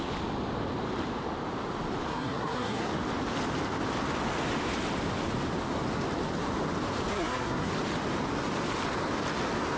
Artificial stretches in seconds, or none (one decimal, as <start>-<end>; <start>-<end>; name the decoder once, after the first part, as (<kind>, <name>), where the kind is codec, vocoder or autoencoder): 2.1-2.9 (codec, SNAC); 7.1-7.7